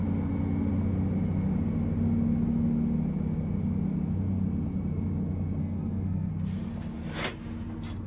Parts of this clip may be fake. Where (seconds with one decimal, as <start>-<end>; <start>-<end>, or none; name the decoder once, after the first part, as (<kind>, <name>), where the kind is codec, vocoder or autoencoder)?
5.6-6.3 (codec, SNAC)